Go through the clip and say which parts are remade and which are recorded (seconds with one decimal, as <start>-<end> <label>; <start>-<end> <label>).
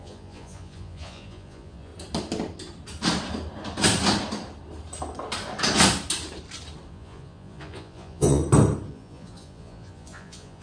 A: 0.0-1.9 remade; 1.9-6.9 recorded; 6.9-8.4 remade; 8.4-8.9 recorded; 8.9-10.6 remade